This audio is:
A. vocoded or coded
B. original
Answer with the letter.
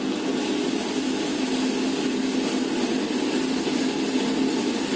B